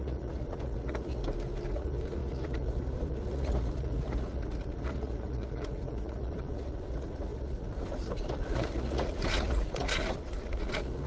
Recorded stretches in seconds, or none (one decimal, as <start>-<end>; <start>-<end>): 1.2-1.7